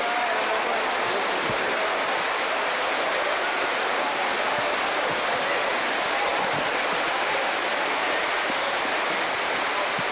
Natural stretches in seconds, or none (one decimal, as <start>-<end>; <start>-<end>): 0.0-10.1